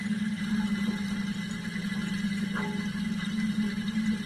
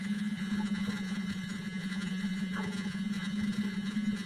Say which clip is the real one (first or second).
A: first